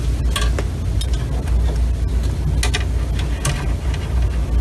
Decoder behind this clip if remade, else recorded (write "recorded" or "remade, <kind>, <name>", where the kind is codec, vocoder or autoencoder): recorded